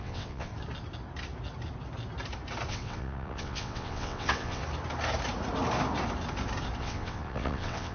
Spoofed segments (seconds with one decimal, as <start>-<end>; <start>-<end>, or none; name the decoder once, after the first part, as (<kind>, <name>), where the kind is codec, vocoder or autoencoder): 0.0-0.5 (vocoder, WaveNeXt); 2.7-4.6; 6.8-7.9